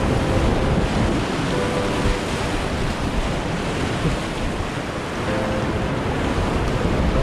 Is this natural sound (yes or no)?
yes